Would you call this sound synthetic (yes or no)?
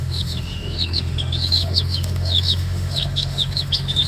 yes